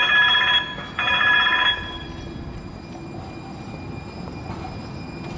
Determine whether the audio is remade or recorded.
recorded